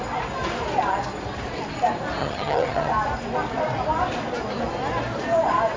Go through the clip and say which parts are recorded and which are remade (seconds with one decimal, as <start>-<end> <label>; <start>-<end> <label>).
0.0-2.2 recorded; 2.2-2.9 remade; 2.9-5.8 recorded